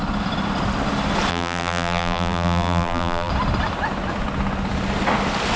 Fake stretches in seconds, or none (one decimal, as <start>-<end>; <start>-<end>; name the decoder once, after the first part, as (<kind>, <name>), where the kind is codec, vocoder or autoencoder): 1.3-3.3 (vocoder, BigVGAN v2)